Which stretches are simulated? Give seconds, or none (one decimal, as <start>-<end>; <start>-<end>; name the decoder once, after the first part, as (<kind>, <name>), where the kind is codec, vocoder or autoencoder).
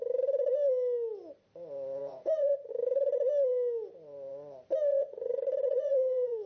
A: 2.0-2.7 (vocoder, Vocos); 4.9-6.5